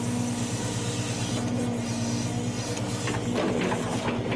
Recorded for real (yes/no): yes